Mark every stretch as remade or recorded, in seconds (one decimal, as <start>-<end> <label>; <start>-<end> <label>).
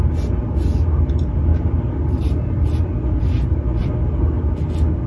0.0-5.1 recorded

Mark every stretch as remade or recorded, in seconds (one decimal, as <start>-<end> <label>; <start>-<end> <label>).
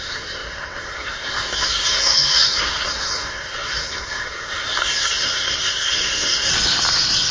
0.0-6.5 remade; 6.5-7.3 recorded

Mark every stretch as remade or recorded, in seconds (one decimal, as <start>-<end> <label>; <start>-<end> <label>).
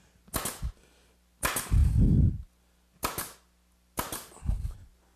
0.0-5.2 recorded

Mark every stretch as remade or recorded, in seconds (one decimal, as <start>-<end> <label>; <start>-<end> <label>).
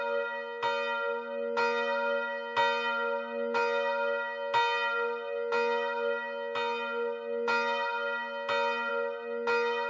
0.0-9.9 recorded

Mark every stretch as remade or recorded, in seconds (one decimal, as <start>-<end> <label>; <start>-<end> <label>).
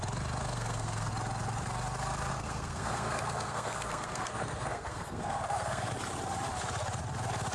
0.0-0.4 recorded; 0.4-1.1 remade; 1.1-2.3 recorded; 2.3-5.9 remade; 5.9-7.5 recorded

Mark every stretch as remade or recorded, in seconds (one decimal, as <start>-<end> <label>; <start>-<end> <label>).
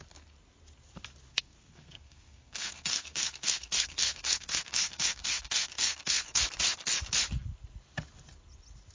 0.0-1.3 recorded; 1.3-6.4 remade; 6.4-8.9 recorded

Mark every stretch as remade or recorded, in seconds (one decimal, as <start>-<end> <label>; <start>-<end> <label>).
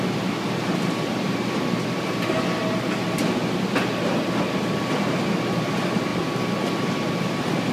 0.0-7.7 recorded